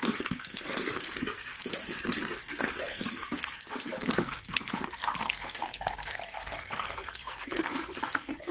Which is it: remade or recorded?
remade